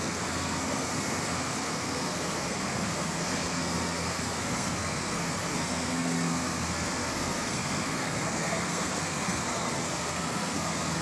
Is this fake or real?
fake